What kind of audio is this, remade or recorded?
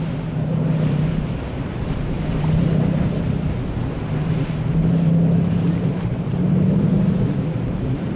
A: remade